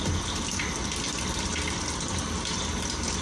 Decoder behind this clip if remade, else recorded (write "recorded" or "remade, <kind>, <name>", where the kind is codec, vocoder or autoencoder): recorded